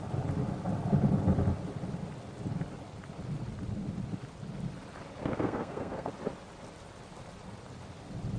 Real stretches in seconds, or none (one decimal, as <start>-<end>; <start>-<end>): 0.0-5.2; 6.1-8.4